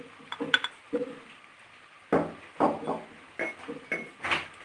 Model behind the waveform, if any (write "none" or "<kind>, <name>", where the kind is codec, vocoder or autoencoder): none